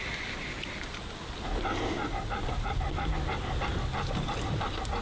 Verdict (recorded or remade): recorded